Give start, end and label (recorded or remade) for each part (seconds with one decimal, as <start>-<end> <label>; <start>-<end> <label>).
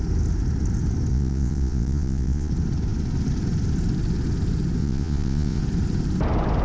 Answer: 0.0-1.1 recorded; 1.1-2.5 remade; 2.5-4.8 recorded; 4.8-5.6 remade; 5.6-6.6 recorded